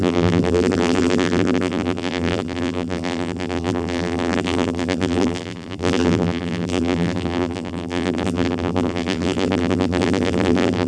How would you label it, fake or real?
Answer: fake